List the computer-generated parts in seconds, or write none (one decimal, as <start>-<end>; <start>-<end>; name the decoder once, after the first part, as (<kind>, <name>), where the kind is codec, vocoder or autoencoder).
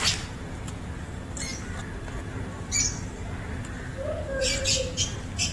none